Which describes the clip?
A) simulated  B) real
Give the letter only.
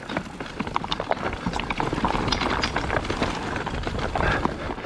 A